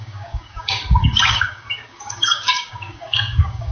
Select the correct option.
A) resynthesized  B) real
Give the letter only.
A